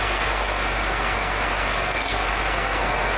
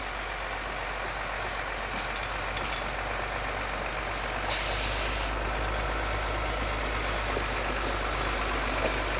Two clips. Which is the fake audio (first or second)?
first